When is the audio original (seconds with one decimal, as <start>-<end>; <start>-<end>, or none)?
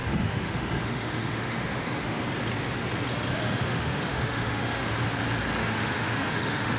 2.2-3.4; 4.9-5.6